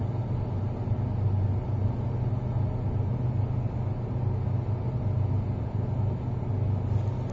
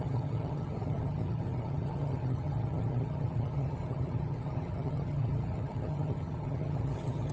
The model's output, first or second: second